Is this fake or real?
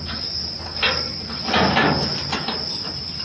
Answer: real